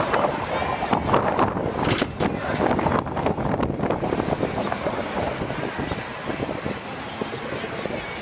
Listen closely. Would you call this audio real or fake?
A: real